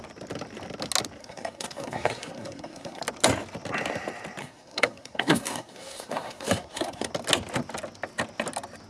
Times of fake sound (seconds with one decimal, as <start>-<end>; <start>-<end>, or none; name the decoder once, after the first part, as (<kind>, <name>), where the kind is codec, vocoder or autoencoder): 1.2-3.0 (codec, SNAC); 4.4-7.1